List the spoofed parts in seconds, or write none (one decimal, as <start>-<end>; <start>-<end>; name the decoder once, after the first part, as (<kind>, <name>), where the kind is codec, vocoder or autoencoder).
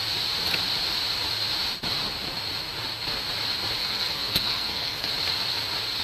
3.8-5.1 (codec, SNAC)